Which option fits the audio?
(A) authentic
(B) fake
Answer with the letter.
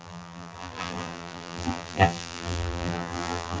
B